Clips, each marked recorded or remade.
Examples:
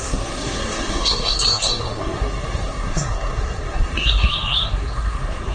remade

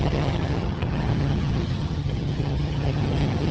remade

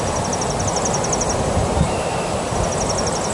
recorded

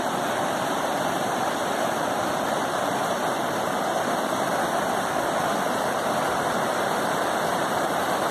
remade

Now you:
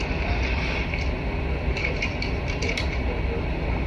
recorded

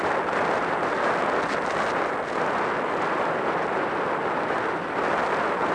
recorded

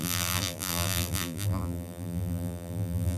remade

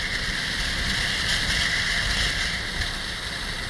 recorded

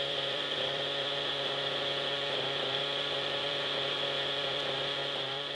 remade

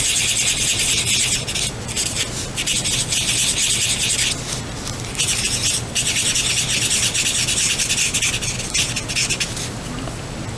recorded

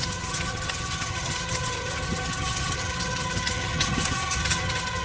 remade